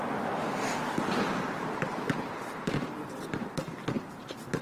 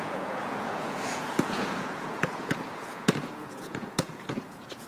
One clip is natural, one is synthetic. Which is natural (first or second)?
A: first